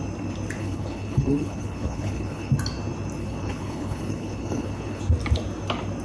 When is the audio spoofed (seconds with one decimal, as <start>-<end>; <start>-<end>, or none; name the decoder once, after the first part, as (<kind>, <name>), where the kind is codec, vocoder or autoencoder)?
0.6-2.5 (codec, HILCodec); 3.2-5.0